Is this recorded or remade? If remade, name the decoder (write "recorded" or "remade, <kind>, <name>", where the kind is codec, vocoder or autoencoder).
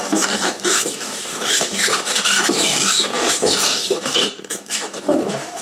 remade, codec, DAC